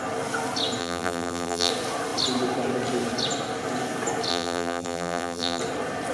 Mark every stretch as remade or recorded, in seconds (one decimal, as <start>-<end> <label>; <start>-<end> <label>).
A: 0.0-0.8 recorded; 0.8-1.7 remade; 1.7-4.3 recorded; 4.3-5.6 remade; 5.6-6.1 recorded